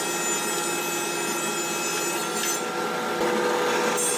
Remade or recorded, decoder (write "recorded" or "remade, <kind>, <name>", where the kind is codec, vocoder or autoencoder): recorded